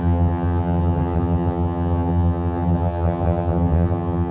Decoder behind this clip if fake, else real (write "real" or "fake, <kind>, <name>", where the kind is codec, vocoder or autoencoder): fake, vocoder, HiFi-GAN